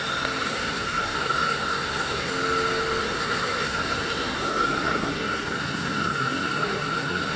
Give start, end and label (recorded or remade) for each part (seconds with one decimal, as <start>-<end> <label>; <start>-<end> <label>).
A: 0.0-0.4 recorded; 0.4-2.3 remade; 2.3-3.0 recorded; 3.0-7.4 remade